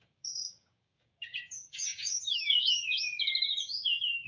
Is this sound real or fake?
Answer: fake